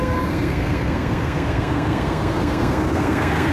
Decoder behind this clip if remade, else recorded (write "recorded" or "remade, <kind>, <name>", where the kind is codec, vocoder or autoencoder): remade, codec, SNAC